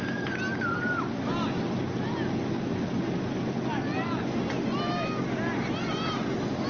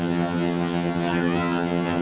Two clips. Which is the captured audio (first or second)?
first